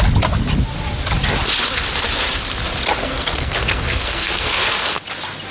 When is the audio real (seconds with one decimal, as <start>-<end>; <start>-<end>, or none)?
0.0-3.0; 5.0-5.5

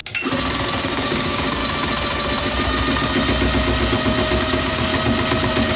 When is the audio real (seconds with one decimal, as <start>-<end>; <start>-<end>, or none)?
0.0-0.8; 1.6-4.4; 4.9-5.8